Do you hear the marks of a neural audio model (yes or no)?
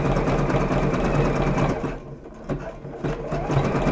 no